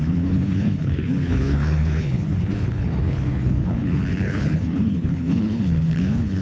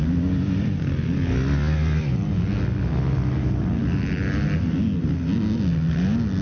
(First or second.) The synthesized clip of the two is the first